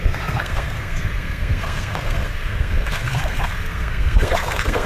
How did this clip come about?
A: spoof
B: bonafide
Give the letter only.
A